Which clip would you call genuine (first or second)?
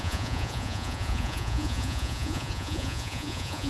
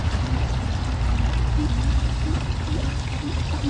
second